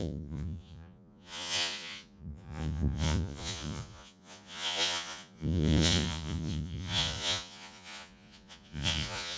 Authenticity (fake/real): fake